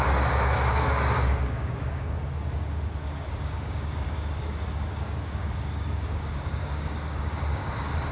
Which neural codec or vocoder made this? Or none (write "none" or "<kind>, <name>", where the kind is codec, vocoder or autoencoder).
codec, DAC